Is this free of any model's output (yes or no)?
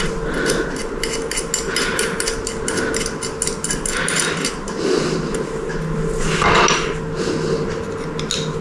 yes